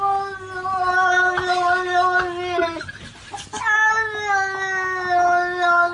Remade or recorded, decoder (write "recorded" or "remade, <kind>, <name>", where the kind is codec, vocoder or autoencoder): recorded